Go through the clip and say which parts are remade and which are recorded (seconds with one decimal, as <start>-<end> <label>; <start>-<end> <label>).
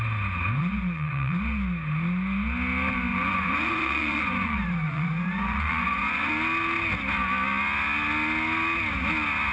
0.0-0.6 recorded; 0.6-1.4 remade; 1.4-3.1 recorded; 3.1-6.3 remade; 6.3-9.5 recorded